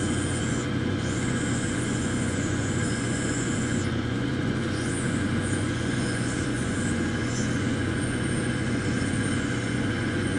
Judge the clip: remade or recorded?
remade